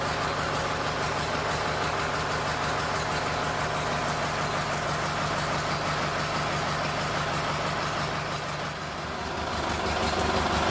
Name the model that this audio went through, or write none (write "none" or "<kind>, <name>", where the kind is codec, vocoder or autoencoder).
none